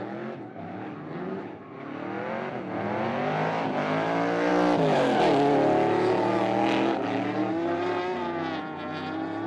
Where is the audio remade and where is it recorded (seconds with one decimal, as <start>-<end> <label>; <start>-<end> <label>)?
0.0-9.5 recorded